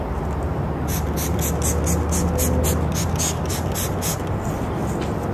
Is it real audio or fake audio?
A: real